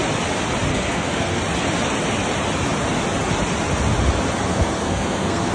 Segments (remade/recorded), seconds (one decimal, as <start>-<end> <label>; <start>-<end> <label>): 0.0-0.7 recorded; 0.7-1.4 remade; 1.4-4.5 recorded; 4.5-5.5 remade